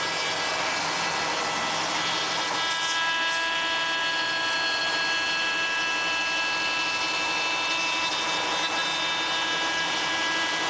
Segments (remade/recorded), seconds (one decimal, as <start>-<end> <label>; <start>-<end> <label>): 0.0-10.7 recorded